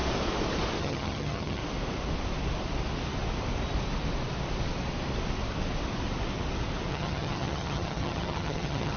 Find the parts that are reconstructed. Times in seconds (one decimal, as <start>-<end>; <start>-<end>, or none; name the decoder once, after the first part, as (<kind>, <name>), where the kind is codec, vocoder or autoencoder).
0.8-1.6 (vocoder, HiFi-GAN); 6.9-9.0